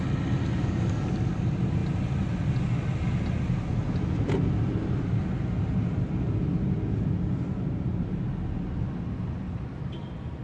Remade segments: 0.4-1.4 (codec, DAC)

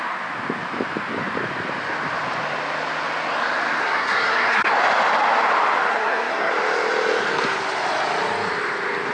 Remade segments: 3.8-4.8 (codec, SNAC); 5.9-6.5

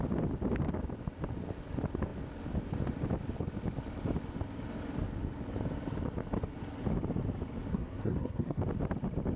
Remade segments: 7.7-8.6 (codec, SNAC)